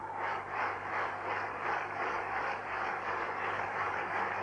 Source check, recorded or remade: remade